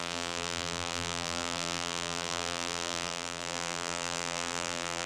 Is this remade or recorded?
remade